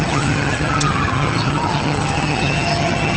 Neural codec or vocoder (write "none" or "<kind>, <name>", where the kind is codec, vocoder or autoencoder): vocoder, HiFi-GAN